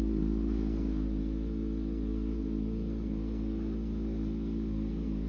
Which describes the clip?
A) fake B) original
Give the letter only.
A